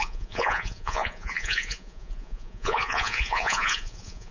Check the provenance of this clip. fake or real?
fake